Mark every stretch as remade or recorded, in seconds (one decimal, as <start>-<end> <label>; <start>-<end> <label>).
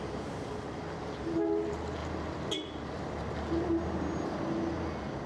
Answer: 0.0-5.3 recorded